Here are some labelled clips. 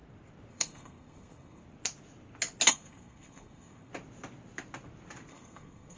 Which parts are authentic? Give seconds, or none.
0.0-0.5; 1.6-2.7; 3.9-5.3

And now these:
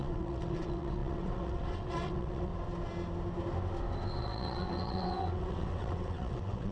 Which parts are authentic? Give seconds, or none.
2.5-4.2

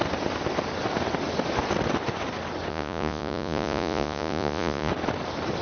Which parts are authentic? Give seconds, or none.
0.0-2.7; 4.9-5.6

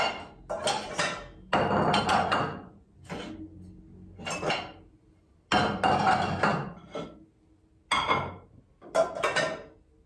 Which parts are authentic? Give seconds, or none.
0.0-2.1; 3.2-10.1

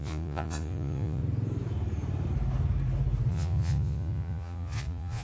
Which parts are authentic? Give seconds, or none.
1.2-3.3

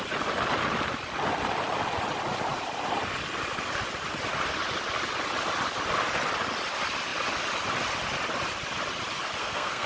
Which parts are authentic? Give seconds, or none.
0.0-9.4